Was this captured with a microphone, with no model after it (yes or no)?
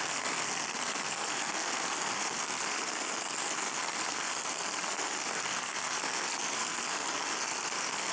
no